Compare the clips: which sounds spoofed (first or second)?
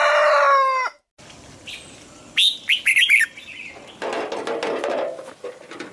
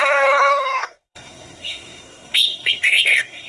second